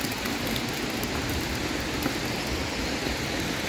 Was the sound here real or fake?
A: real